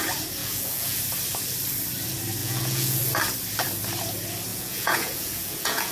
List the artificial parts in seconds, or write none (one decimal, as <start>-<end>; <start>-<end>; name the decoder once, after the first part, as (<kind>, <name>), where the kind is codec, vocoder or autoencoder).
0.4-1.0 (vocoder, Vocos); 2.4-3.0; 4.5-5.9